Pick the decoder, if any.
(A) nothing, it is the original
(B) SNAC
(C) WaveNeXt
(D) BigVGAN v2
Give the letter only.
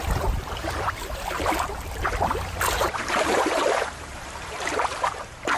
D